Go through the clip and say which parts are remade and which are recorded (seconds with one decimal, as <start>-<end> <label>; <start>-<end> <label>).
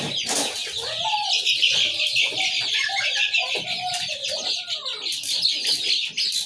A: 0.0-6.5 recorded